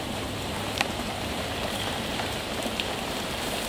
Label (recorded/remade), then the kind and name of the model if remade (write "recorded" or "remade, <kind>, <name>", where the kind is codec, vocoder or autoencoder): remade, vocoder, BigVGAN v2